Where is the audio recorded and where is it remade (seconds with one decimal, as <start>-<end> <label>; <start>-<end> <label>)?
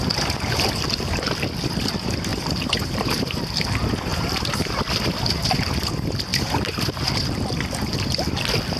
0.0-2.3 recorded; 2.3-3.4 remade; 3.4-4.1 recorded; 4.1-4.6 remade; 4.6-6.3 recorded; 6.3-7.1 remade; 7.1-8.8 recorded